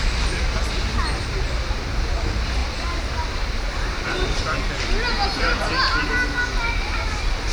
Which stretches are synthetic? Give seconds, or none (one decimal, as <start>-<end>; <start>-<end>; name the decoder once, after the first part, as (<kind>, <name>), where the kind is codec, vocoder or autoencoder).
2.6-4.4 (vocoder, BigVGAN v2)